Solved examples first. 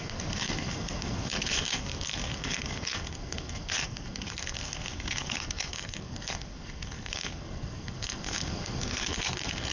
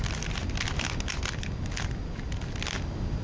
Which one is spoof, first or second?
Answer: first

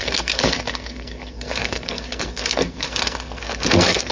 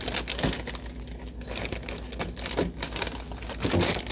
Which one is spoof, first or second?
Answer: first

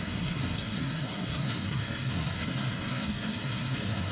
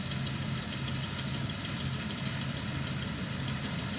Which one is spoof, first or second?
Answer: first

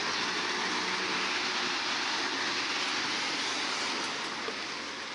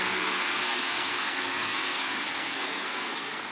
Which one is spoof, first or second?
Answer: second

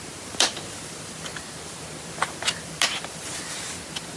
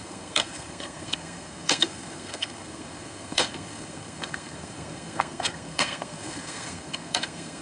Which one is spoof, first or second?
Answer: second